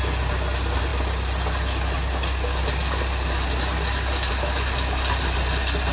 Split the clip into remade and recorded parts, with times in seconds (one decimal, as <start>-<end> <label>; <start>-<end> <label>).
0.0-5.9 recorded